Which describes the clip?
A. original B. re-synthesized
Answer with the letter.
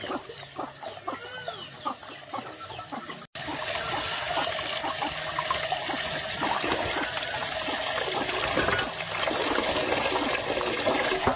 A